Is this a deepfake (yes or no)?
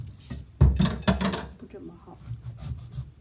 no